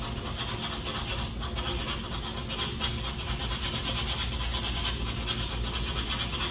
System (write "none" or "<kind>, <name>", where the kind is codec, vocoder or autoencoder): none